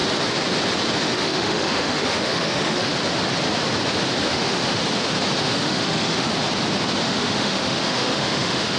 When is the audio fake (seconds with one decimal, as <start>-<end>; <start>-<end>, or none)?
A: 1.0-2.9; 4.2-4.8; 5.4-6.3; 7.0-8.8